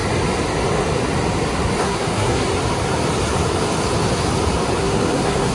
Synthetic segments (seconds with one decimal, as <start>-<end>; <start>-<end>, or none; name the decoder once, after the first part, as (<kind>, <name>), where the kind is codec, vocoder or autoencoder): 1.8-2.4 (codec, SNAC); 4.8-5.5